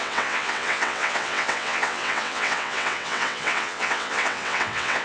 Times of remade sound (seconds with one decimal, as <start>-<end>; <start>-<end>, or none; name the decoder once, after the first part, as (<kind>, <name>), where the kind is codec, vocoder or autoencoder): 0.0-5.0 (vocoder, WaveNeXt)